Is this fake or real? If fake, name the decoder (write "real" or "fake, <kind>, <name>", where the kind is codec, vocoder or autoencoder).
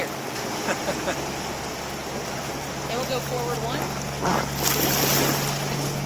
real